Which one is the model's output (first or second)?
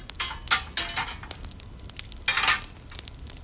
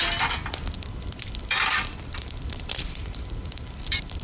second